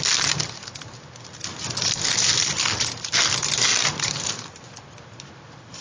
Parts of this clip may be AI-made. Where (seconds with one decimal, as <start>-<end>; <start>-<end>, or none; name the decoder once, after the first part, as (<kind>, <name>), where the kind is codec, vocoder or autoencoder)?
3.7-5.8 (vocoder, BigVGAN v2)